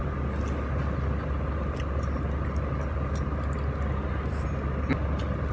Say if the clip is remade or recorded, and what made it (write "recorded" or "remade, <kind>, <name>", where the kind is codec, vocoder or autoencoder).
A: recorded